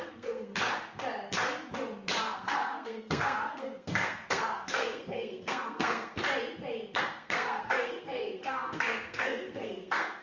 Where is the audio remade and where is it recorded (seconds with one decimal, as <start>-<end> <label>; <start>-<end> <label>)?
0.0-0.5 remade; 0.5-2.2 recorded; 2.2-6.2 remade; 6.2-7.0 recorded; 7.0-10.2 remade